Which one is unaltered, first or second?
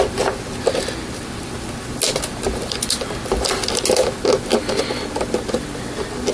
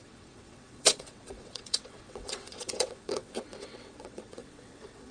first